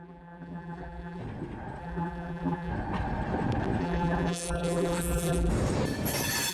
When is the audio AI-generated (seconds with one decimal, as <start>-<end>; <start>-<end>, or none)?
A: 0.0-1.2; 1.8-2.7; 3.8-5.5